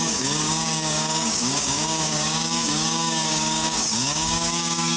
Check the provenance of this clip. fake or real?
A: fake